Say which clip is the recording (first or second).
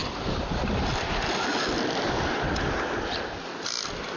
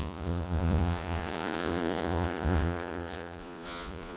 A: first